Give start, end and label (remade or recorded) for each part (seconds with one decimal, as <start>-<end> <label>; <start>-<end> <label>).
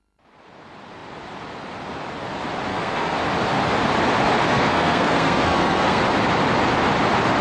0.0-2.7 recorded; 2.7-3.2 remade; 3.2-4.5 recorded; 4.5-6.0 remade; 6.0-7.4 recorded